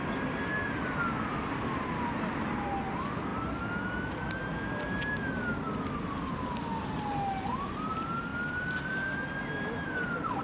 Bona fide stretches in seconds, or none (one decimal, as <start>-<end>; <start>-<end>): 0.0-10.4